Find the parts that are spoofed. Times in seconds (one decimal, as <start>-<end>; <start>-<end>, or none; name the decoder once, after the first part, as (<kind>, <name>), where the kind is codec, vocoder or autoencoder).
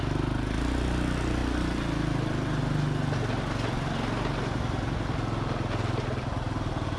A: none